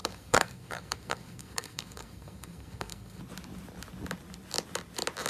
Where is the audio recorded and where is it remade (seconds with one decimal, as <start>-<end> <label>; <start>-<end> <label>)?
0.0-3.2 remade; 3.2-5.3 recorded